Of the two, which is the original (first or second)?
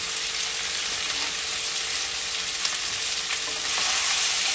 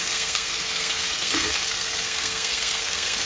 first